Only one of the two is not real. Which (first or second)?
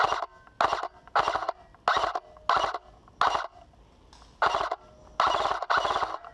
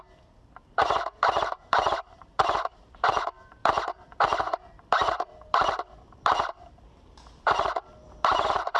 second